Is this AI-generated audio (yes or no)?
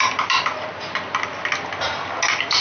no